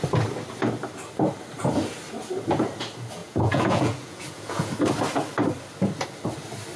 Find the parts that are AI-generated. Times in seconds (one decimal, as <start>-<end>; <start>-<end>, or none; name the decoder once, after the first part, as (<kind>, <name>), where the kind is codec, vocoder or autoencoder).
3.2-4.7 (vocoder, Vocos)